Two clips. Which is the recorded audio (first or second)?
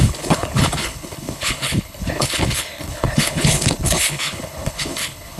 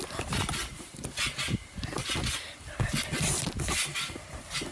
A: second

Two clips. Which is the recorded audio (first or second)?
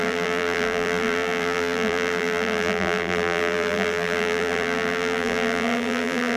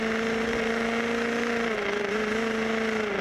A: second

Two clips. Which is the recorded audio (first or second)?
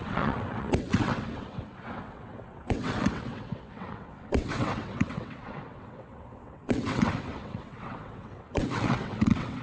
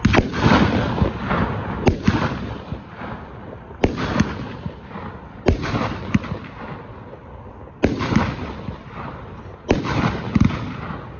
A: second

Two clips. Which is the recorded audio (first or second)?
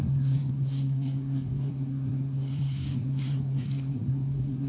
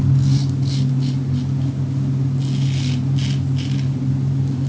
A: second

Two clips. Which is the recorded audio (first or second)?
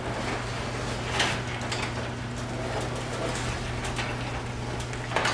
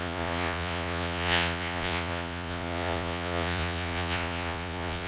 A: first